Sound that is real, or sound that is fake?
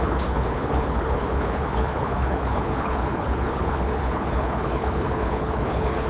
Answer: fake